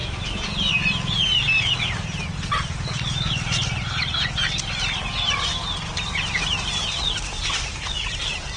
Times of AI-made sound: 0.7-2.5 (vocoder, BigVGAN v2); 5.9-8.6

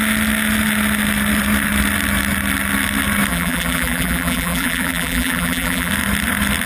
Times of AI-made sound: 3.3-5.9 (vocoder, BigVGAN v2)

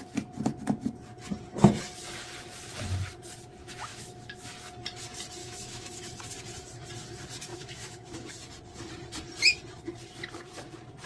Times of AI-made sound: 3.6-4.5 (autoencoder, DAC-VAE); 5.4-6.3; 7.5-8.3

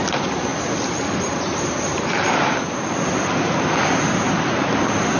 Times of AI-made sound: none

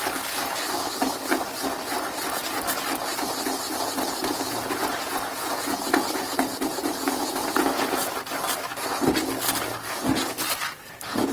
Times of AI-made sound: 4.2-8.1 (vocoder, Vocos)

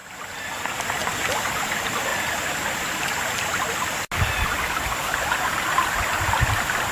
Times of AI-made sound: 0.5-1.0 (vocoder, BigVGAN v2); 1.5-2.1; 6.2-6.9